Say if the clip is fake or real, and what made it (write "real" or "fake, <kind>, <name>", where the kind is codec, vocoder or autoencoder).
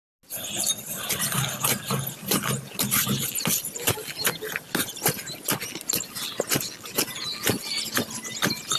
real